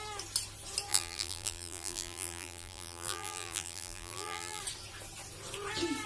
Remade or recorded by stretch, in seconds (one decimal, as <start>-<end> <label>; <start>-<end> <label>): 0.0-0.9 recorded; 0.9-4.6 remade; 4.6-6.1 recorded